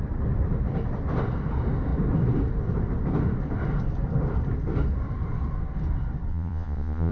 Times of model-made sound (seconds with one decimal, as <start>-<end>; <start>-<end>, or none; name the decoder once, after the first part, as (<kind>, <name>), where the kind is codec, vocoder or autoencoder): 6.3-7.1 (vocoder, Vocos)